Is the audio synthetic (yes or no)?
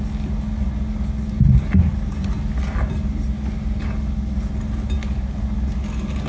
no